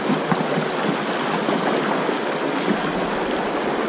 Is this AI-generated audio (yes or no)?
no